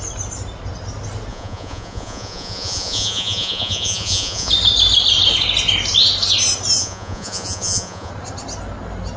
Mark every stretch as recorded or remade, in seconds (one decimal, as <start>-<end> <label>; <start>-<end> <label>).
0.0-1.3 recorded; 1.3-4.5 remade; 4.5-6.8 recorded; 6.8-8.1 remade; 8.1-9.2 recorded